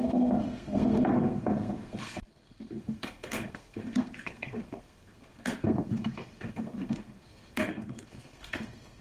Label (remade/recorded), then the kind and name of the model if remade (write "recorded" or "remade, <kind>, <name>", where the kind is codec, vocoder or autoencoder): remade, codec, SNAC